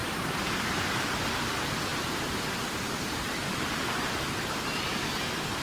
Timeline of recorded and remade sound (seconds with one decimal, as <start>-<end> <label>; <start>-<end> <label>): 0.0-0.8 remade; 0.8-1.9 recorded; 1.9-4.1 remade; 4.1-5.6 recorded